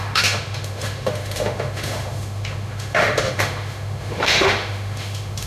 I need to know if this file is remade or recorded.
remade